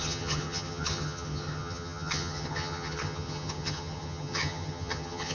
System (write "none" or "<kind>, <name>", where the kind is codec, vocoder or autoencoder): vocoder, HiFi-GAN